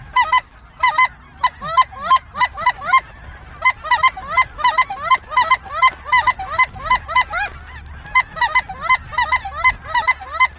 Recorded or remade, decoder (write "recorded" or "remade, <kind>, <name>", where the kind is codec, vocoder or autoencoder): recorded